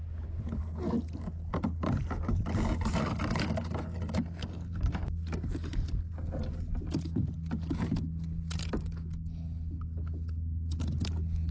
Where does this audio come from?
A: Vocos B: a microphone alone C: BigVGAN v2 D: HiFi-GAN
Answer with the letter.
B